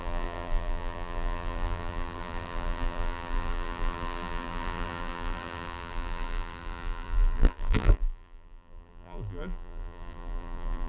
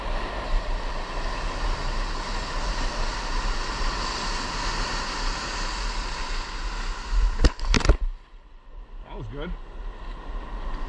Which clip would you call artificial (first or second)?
first